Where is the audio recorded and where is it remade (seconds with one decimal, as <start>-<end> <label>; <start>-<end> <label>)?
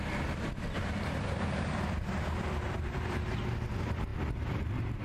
0.0-5.0 recorded